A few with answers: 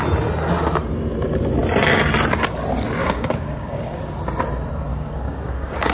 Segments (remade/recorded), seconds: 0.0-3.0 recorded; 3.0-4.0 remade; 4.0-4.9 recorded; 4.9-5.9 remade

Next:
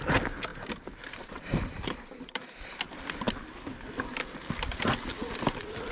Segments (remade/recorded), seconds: 0.0-0.5 recorded; 0.5-2.7 remade; 2.7-5.9 recorded

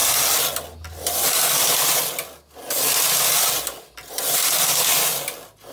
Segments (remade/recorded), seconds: 0.0-5.7 recorded

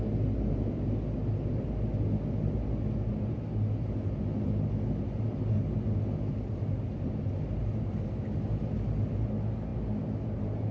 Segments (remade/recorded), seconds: 0.0-10.7 recorded